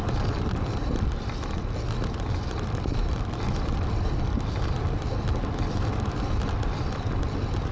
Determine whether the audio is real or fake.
real